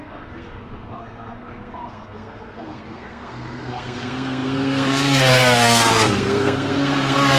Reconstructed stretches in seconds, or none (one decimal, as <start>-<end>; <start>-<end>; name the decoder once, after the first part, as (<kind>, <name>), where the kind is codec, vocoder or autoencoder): 0.0-7.4 (codec, SNAC)

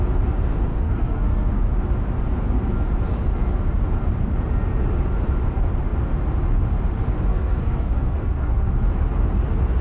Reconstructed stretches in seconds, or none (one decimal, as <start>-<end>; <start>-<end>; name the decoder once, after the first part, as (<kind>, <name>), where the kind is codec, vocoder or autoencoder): 0.7-1.6 (codec, SNAC); 7.3-8.7

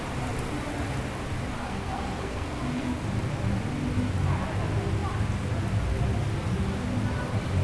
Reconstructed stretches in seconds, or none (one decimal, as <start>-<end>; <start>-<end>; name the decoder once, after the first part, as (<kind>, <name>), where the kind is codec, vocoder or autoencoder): 1.6-3.0 (codec, SNAC)